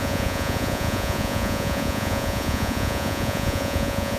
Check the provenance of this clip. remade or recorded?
remade